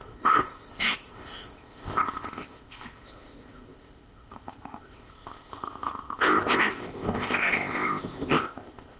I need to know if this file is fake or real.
fake